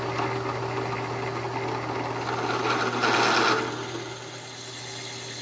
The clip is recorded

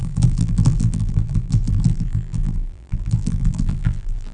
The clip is remade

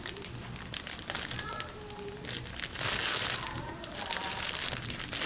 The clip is recorded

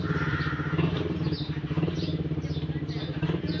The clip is remade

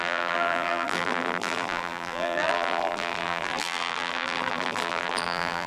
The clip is remade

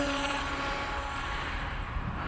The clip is remade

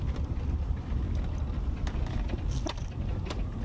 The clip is remade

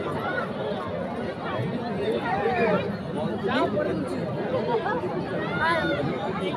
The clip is recorded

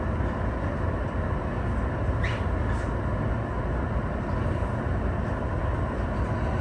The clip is recorded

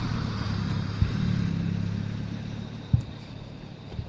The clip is remade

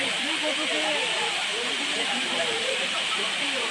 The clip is remade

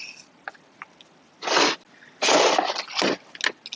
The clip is recorded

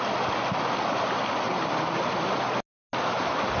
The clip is recorded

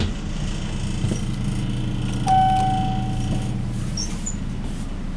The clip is recorded